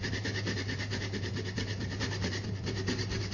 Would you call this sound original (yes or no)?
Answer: no